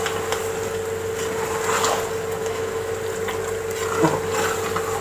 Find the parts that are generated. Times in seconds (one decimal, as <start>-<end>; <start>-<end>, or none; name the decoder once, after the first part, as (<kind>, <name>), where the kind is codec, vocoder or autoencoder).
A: 2.4-2.9 (autoencoder, DAC-VAE)